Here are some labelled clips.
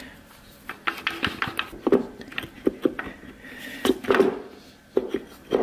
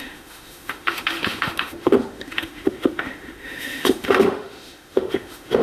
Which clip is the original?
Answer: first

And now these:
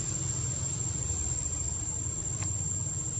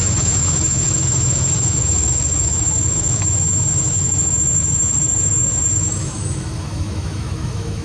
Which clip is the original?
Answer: first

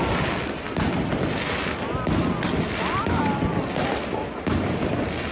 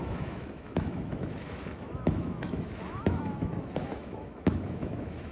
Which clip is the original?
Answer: first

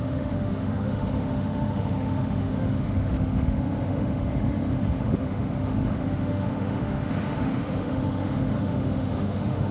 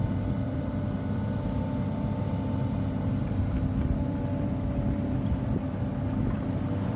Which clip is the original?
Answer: second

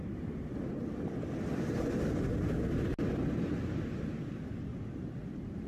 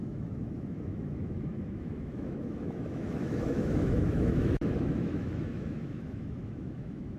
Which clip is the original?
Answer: first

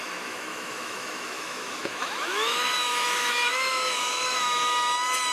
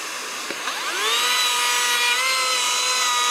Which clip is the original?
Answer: second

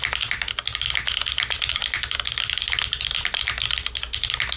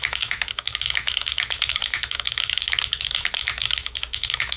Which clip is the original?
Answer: first